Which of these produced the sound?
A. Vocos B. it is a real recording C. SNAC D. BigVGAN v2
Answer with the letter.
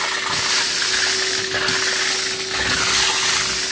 B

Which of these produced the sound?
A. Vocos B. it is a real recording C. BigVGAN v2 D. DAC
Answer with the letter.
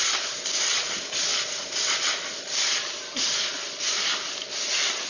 B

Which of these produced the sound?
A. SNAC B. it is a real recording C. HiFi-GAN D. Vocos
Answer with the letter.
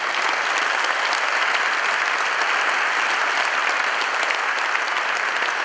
B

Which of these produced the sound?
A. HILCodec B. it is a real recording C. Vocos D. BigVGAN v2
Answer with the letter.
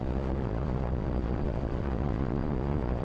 C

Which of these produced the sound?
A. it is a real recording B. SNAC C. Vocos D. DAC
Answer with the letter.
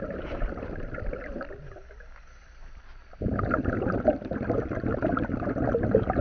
A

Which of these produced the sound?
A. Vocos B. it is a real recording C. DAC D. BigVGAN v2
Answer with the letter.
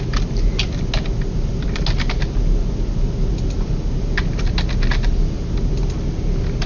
B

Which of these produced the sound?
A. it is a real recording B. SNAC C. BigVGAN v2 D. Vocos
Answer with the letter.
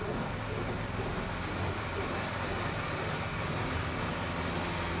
A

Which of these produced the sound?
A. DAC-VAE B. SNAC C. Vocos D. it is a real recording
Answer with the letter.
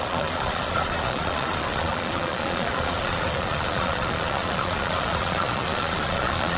C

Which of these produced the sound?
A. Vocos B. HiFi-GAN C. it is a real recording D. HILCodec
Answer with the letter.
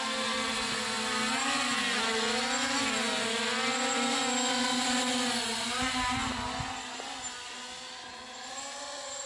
C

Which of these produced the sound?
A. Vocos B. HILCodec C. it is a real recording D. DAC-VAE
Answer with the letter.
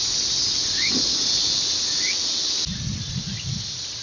C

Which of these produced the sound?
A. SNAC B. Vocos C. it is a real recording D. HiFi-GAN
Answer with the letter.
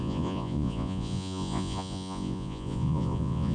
B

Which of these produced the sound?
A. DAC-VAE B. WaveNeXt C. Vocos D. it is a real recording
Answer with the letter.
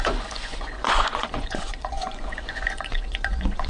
C